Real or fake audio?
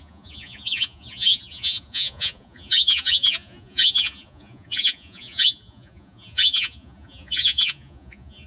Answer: fake